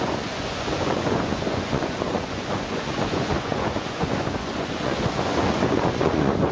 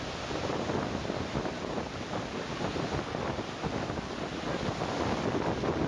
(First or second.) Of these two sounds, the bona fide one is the second